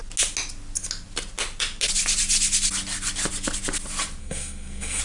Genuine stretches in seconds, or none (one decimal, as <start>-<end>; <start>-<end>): 0.0-4.2